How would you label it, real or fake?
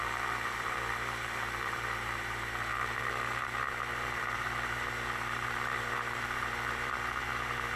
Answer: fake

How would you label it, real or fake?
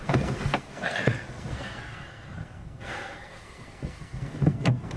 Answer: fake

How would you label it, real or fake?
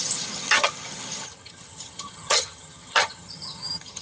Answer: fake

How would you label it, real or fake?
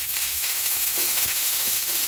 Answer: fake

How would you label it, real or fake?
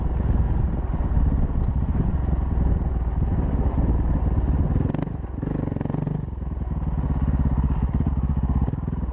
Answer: real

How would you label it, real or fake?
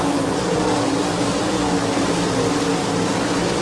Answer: real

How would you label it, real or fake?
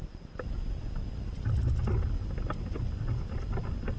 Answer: real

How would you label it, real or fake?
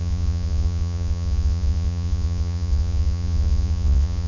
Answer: fake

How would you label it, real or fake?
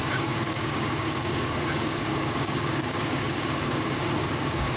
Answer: fake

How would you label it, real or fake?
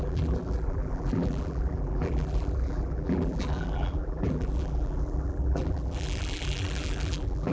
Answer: fake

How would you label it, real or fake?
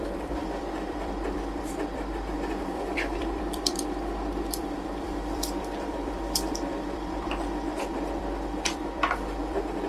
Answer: fake